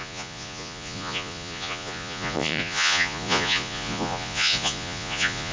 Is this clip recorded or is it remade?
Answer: remade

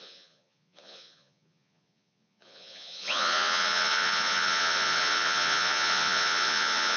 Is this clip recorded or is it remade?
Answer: remade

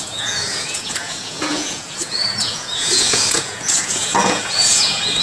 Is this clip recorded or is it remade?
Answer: remade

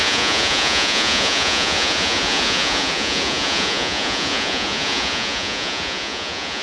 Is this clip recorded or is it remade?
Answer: remade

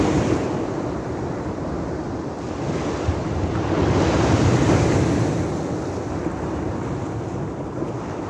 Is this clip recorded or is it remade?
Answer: recorded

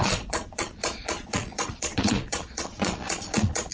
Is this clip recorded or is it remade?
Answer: remade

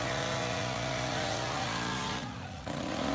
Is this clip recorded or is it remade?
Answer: remade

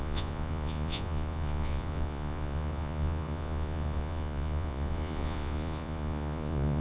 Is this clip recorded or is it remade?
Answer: remade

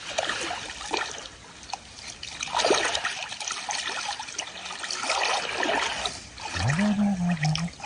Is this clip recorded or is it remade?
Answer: recorded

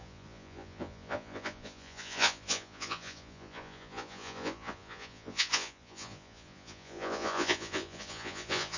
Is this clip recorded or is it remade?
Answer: remade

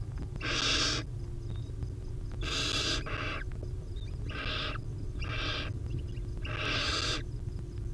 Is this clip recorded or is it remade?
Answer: recorded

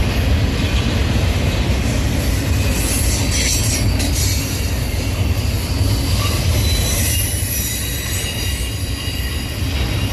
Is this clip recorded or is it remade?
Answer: recorded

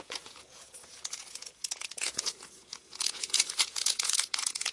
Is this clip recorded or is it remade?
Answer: remade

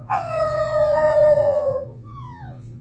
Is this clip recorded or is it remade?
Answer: remade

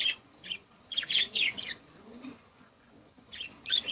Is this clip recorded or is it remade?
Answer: remade